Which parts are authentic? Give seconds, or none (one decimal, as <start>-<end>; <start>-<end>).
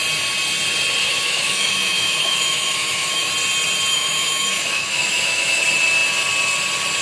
0.0-1.0; 3.3-3.9; 5.6-7.0